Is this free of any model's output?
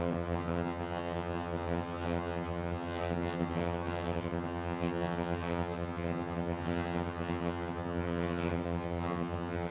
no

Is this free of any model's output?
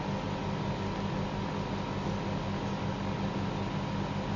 yes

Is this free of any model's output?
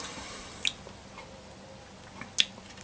yes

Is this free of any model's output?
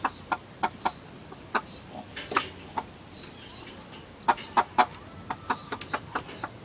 yes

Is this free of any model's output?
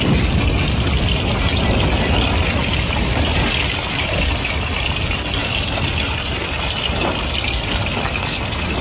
yes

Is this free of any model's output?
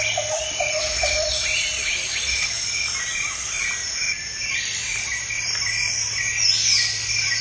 yes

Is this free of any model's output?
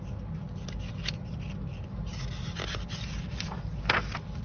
yes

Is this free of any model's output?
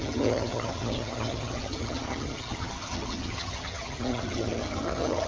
no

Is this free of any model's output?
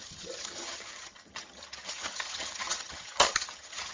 no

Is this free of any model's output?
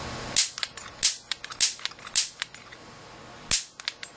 yes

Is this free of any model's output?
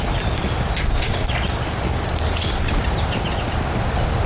yes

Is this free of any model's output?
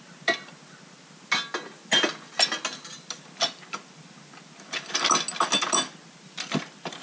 yes